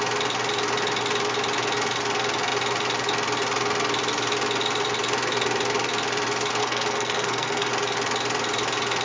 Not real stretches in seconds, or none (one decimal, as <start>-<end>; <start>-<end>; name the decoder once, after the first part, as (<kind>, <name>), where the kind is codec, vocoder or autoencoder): 6.6-7.7 (codec, SNAC)